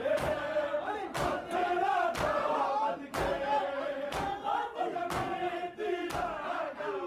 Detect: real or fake real